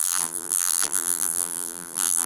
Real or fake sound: fake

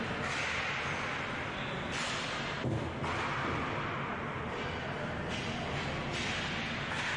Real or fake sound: real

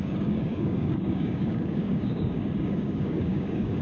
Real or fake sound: fake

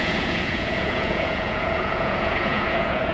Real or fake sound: fake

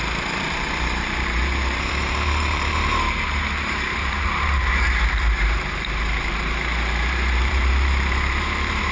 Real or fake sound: fake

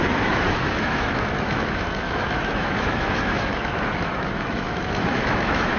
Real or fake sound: fake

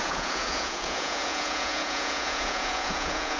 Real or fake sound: fake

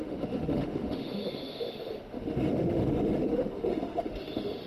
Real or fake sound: fake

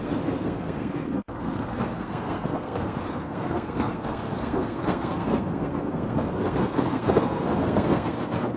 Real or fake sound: fake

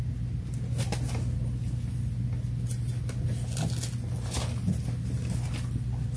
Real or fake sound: real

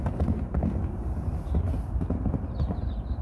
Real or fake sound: real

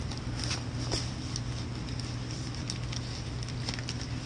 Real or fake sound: real